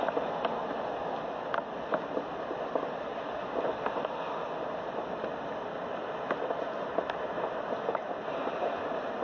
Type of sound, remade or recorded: recorded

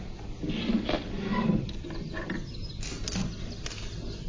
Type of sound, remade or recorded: recorded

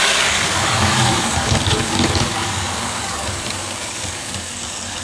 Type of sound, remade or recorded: remade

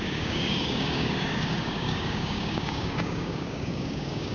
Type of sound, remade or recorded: remade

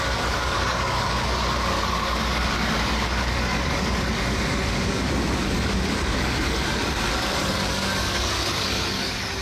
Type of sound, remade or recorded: remade